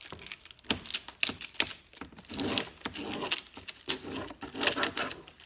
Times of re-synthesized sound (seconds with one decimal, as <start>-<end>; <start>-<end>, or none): none